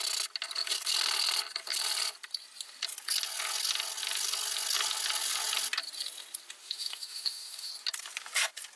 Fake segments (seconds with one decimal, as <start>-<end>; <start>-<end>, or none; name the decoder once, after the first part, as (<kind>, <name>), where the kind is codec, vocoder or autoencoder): 6.6-7.7 (autoencoder, DAC-VAE)